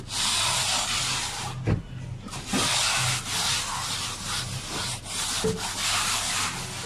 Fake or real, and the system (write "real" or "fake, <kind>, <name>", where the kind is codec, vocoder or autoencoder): real